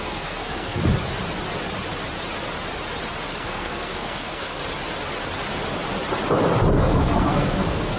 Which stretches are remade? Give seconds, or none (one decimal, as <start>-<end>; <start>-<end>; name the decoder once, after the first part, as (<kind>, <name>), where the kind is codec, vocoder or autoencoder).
0.0-0.8 (codec, SNAC); 3.3-4.6; 6.7-8.0